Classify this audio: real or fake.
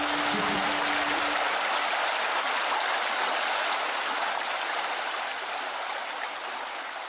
real